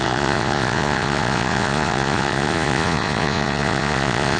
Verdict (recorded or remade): remade